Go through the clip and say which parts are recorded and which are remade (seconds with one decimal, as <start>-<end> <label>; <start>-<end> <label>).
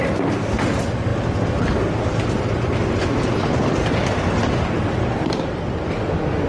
0.0-6.5 recorded